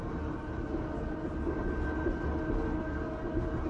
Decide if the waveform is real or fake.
real